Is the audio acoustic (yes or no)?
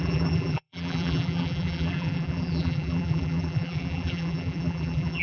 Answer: no